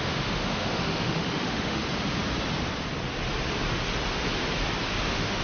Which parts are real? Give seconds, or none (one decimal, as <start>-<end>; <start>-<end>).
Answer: 1.8-5.0